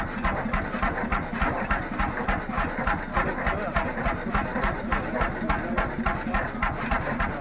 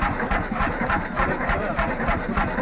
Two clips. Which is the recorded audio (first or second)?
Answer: first